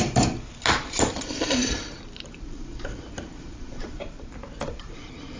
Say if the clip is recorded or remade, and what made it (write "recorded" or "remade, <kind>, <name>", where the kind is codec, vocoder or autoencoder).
remade, vocoder, BigVGAN v2